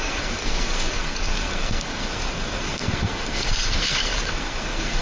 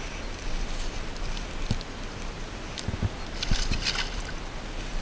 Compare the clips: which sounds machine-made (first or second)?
first